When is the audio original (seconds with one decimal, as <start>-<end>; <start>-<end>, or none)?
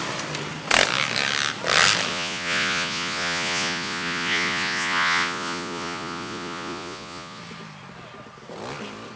0.0-2.1; 7.4-9.2